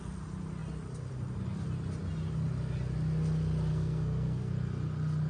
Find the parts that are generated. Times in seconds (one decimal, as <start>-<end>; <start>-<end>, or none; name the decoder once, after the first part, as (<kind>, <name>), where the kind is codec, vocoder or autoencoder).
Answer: 3.7-4.5 (codec, SNAC)